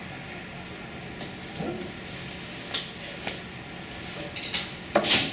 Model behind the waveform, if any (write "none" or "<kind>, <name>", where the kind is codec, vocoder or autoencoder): none